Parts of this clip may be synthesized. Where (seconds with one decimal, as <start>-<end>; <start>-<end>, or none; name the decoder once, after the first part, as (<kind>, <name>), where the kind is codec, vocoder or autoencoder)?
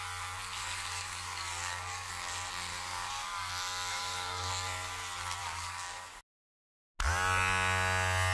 0.6-2.1 (codec, DAC); 2.7-3.5; 3.9-4.5; 5.4-6.2